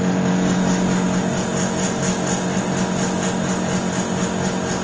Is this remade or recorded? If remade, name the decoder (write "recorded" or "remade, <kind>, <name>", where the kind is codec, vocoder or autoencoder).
recorded